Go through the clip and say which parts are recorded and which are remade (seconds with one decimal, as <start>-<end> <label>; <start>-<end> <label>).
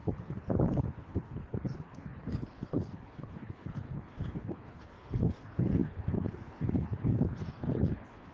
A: 0.0-8.3 remade